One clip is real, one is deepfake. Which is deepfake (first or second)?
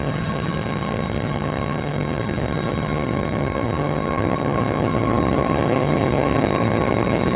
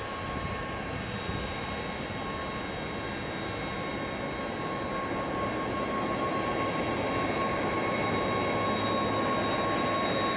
first